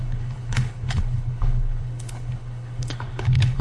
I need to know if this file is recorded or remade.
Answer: remade